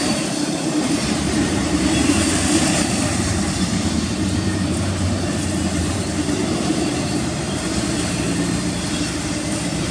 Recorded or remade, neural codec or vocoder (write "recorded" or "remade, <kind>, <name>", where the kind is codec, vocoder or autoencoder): remade, vocoder, BigVGAN v2